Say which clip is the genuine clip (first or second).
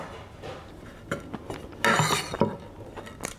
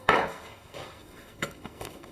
first